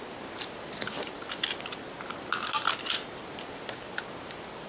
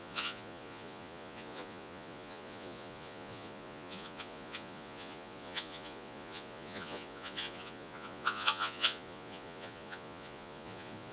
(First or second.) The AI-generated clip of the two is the second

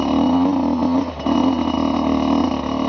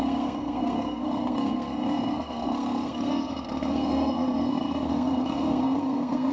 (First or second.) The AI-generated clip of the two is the second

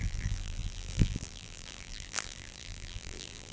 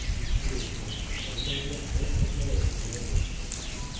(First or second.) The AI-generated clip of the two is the first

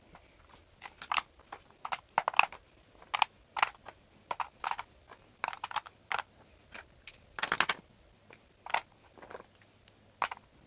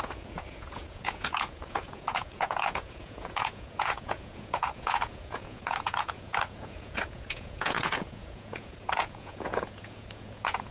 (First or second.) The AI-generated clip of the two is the second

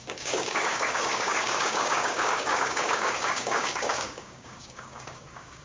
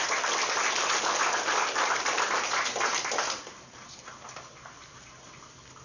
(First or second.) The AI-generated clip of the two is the first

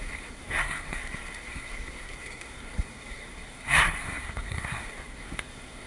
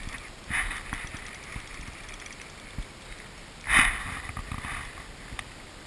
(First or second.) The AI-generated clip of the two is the first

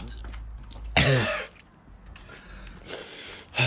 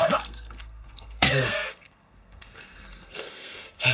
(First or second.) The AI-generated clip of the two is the second